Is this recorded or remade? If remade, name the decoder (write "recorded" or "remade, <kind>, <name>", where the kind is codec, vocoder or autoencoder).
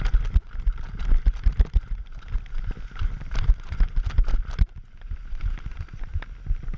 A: recorded